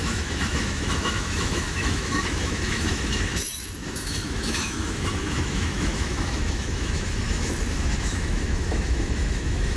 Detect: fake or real fake